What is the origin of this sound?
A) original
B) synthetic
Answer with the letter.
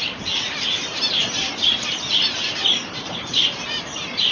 B